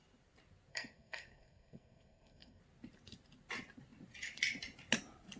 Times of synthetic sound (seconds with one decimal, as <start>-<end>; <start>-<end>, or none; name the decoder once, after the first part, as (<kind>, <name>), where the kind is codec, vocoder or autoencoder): 0.7-2.6 (codec, SNAC)

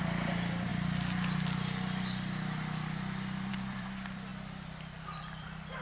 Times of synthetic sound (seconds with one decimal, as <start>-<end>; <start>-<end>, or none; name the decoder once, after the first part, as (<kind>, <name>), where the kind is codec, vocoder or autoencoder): 0.0-0.7 (vocoder, BigVGAN v2); 3.5-5.8

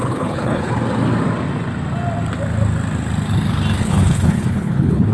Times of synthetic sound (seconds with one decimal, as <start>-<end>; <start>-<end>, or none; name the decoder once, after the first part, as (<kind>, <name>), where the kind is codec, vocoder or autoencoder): 0.0-0.7 (codec, HILCodec); 3.8-5.1

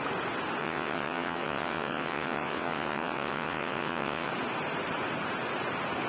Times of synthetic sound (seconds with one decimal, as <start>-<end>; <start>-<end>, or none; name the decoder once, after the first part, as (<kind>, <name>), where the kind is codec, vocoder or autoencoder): 0.6-4.3 (vocoder, WaveNeXt)

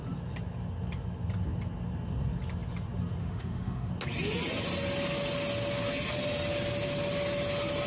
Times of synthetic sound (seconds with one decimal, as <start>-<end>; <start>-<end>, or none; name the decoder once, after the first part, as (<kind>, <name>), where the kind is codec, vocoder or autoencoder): 3.2-3.9 (autoencoder, DAC-VAE)

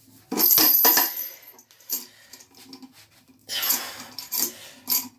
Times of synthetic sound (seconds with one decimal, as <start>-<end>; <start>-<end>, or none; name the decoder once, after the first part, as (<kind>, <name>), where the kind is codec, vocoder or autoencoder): 3.4-3.9 (vocoder, Vocos)

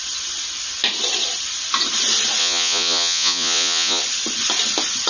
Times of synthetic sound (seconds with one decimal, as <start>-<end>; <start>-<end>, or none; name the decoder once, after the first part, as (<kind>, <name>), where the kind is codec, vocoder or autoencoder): 2.4-4.0 (vocoder, Vocos)